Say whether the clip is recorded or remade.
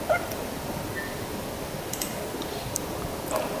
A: recorded